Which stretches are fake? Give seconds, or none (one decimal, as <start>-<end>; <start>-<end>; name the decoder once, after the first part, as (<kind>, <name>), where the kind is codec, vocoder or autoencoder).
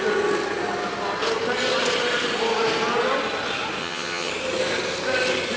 3.8-4.3 (vocoder, HiFi-GAN)